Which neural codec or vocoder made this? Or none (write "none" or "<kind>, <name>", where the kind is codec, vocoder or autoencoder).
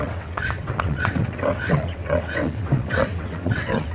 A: vocoder, WaveNeXt